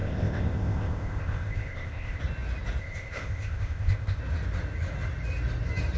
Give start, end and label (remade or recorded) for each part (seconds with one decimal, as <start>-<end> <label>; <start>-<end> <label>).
0.0-2.2 remade; 2.2-2.8 recorded; 2.8-4.2 remade; 4.2-6.0 recorded